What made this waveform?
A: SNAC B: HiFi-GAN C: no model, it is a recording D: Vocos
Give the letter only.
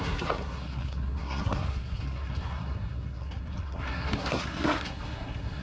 A